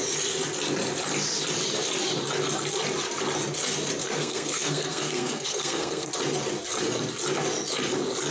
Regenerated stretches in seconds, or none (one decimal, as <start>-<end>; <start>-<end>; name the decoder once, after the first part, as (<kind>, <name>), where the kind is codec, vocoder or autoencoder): 4.0-6.1 (codec, SNAC)